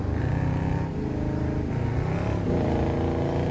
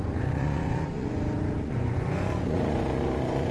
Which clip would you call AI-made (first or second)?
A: second